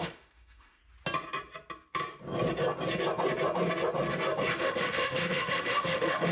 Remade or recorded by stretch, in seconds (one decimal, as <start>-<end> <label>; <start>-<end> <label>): 0.0-0.8 remade; 0.8-4.6 recorded; 4.6-6.3 remade